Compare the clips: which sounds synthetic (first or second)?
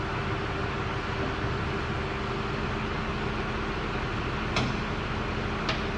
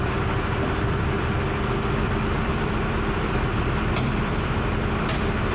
second